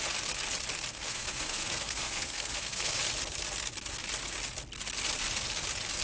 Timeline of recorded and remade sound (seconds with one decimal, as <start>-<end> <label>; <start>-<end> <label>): 0.0-0.9 recorded; 0.9-3.0 remade; 3.0-6.0 recorded